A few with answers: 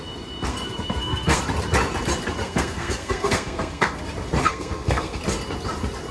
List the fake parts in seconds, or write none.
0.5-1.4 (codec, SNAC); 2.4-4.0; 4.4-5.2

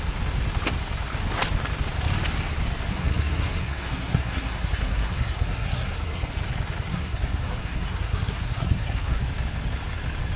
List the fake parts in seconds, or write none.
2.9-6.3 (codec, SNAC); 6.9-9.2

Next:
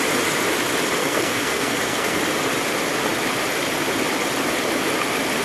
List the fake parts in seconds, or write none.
1.0-2.2 (codec, SNAC)